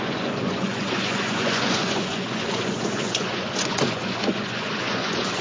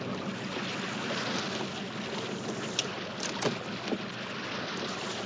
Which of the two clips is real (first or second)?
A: second